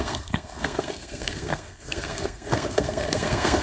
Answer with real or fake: fake